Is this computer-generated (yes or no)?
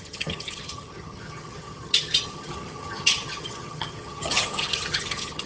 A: yes